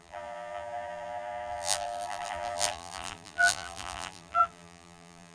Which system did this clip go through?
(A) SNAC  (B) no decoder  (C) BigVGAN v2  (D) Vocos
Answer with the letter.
C